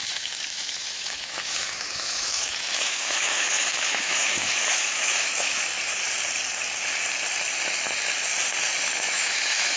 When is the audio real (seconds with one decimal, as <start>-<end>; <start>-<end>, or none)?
5.7-8.8